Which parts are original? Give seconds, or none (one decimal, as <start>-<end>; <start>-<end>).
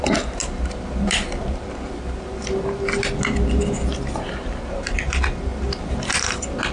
0.0-6.7